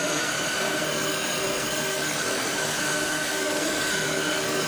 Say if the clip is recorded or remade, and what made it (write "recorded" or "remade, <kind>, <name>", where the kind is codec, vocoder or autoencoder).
remade, codec, SNAC